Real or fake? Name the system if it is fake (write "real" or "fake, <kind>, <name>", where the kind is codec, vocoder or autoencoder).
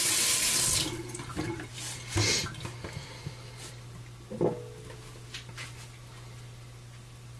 real